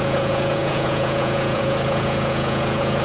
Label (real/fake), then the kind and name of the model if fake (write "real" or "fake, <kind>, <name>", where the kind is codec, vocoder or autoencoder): fake, vocoder, Vocos